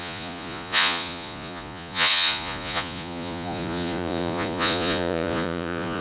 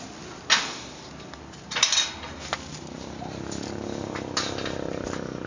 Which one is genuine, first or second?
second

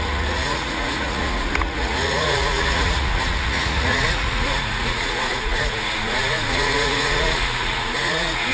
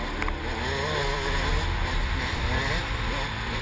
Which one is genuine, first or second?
second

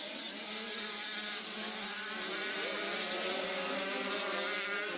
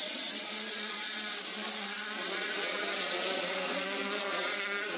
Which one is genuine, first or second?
first